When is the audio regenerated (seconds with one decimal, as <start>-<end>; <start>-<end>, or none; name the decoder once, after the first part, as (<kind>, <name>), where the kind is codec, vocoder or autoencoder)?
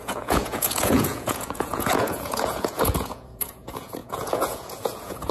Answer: 0.0-5.3 (vocoder, Vocos)